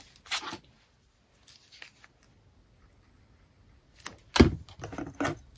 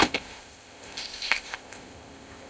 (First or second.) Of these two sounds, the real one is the first